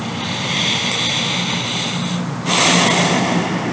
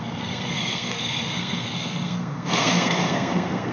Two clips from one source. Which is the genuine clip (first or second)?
first